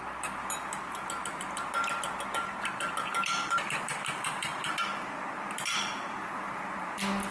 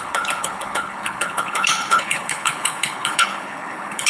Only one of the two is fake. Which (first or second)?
second